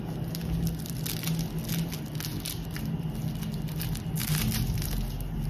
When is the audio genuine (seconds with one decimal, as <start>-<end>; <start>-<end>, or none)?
0.0-5.5